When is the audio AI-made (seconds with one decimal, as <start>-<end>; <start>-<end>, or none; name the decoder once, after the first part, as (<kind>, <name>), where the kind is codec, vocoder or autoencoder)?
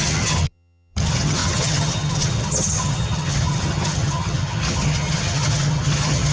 0.0-6.3 (vocoder, HiFi-GAN)